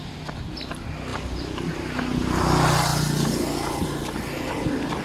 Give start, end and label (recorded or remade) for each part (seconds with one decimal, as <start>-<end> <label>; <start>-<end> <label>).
0.0-5.0 recorded

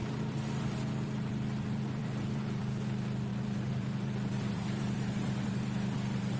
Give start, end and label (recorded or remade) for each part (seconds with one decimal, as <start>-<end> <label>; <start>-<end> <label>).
0.0-2.6 remade; 2.6-3.3 recorded; 3.3-6.4 remade

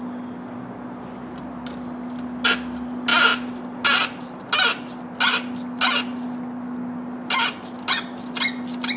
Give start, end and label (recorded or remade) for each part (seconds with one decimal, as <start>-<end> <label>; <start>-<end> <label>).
0.0-9.0 recorded

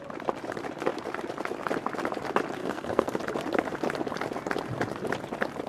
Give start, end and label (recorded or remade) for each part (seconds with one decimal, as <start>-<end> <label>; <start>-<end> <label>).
0.0-2.6 recorded; 2.6-3.2 remade; 3.2-5.7 recorded

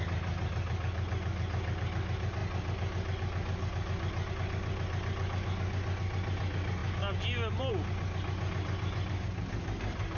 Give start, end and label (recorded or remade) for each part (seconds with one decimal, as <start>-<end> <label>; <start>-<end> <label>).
0.0-10.2 recorded

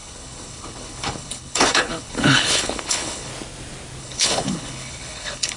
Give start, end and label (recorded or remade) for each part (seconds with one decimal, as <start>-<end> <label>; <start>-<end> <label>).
0.0-3.3 remade; 3.3-4.0 recorded; 4.0-5.6 remade